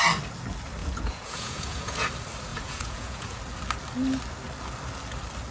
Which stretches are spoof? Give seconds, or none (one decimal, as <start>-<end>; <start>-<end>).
0.8-2.1; 2.5-3.4